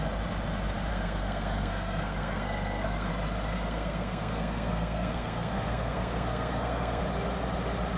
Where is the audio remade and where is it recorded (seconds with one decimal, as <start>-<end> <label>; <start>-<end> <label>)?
0.0-0.9 recorded; 0.9-3.1 remade; 3.1-3.5 recorded; 3.5-7.0 remade; 7.0-8.0 recorded